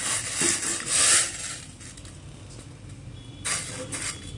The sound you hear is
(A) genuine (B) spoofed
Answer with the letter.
A